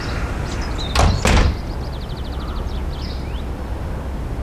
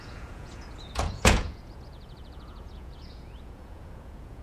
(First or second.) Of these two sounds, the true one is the first